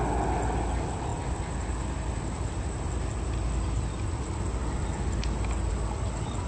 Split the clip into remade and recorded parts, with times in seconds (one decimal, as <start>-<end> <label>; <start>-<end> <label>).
0.0-6.5 recorded